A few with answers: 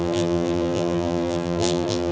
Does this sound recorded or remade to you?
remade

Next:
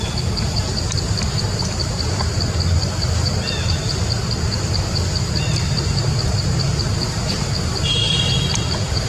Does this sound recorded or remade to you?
remade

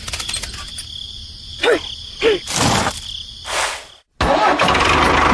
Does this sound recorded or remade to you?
recorded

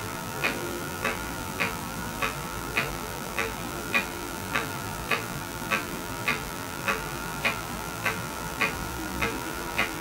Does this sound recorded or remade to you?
remade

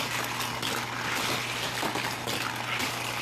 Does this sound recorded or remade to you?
remade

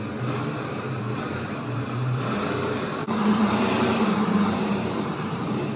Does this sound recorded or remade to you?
remade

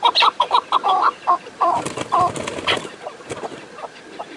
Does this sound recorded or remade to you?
remade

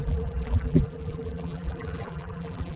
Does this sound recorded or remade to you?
remade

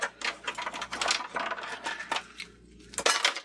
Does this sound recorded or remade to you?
recorded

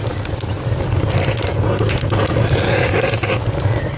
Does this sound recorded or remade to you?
recorded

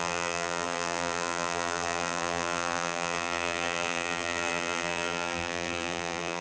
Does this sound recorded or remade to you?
remade